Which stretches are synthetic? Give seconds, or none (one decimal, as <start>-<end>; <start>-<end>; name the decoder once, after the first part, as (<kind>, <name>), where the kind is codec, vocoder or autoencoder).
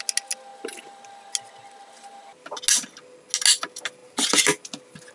none